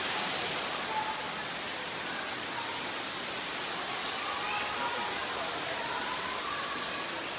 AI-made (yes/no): no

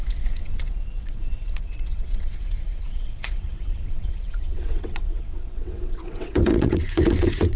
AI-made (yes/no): yes